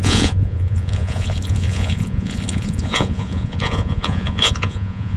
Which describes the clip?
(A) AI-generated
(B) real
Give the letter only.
A